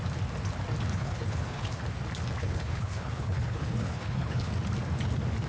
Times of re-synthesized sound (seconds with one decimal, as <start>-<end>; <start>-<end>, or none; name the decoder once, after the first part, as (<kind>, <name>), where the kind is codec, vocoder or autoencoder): 0.9-1.8 (codec, HILCodec); 2.4-4.5